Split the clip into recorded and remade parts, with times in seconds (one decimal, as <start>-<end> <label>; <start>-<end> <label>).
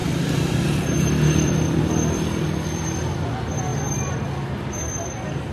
0.0-3.3 remade; 3.3-5.5 recorded